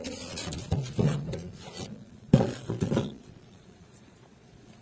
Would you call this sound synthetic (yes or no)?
yes